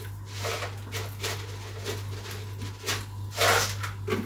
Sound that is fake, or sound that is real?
real